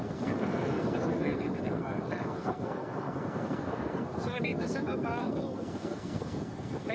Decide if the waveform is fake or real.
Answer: fake